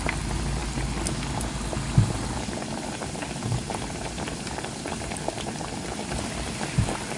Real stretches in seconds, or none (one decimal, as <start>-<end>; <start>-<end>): 0.0-7.2